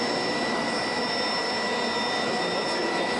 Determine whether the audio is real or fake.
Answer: real